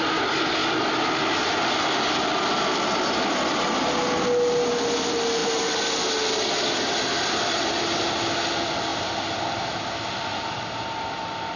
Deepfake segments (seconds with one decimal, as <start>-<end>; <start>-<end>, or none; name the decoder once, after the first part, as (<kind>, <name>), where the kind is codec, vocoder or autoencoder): none